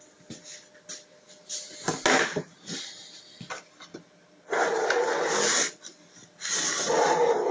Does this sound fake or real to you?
real